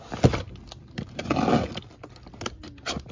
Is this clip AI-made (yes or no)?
no